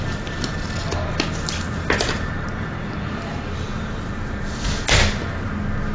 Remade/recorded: recorded